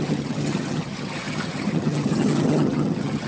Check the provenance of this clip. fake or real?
fake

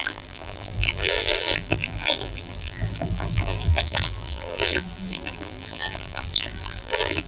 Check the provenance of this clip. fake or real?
fake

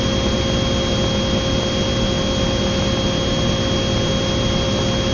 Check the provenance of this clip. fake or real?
real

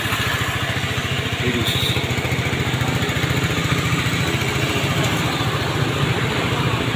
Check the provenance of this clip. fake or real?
real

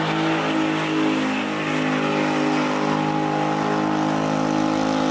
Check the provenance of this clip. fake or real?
real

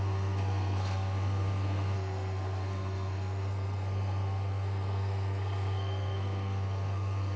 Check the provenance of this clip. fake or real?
fake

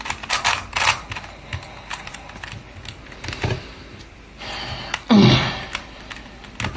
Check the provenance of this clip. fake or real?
real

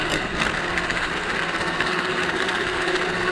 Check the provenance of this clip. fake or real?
fake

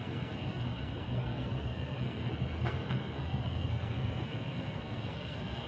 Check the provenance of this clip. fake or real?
fake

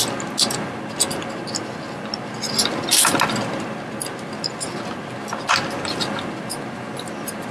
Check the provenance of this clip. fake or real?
real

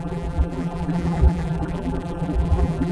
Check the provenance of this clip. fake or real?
fake